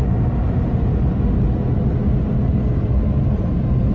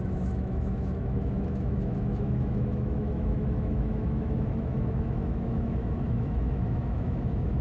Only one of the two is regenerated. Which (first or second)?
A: second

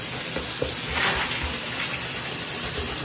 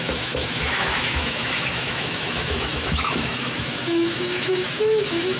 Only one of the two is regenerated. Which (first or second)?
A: second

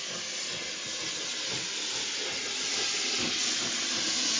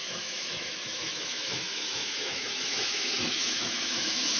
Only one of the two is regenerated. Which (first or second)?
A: second